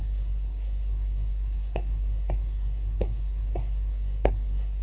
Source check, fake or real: fake